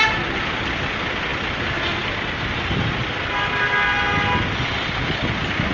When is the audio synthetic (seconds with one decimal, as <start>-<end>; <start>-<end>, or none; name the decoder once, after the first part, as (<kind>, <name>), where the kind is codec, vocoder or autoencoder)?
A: none